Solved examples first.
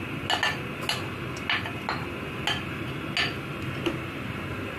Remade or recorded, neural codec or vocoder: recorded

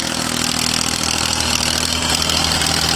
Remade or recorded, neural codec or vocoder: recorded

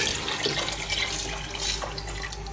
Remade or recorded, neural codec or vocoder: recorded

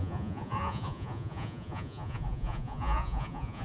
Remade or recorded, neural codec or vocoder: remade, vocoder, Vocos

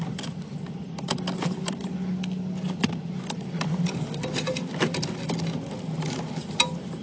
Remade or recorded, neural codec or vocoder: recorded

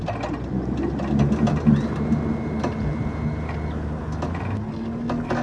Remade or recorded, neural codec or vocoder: recorded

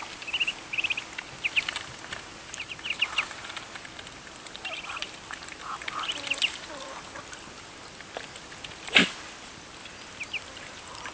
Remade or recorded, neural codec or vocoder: recorded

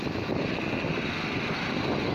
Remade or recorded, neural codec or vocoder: recorded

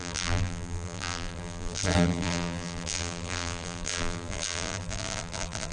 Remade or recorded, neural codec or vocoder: remade, vocoder, BigVGAN v2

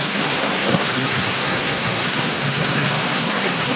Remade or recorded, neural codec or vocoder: remade, codec, SNAC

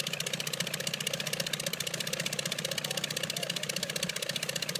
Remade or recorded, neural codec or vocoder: recorded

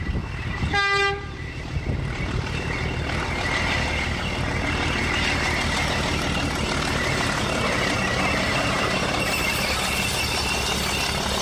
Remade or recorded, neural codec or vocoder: recorded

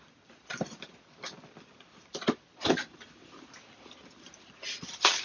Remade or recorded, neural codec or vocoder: recorded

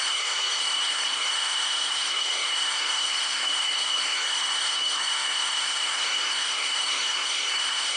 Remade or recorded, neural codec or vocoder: remade, codec, SNAC